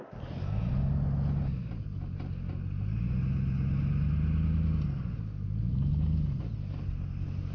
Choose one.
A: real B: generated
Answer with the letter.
A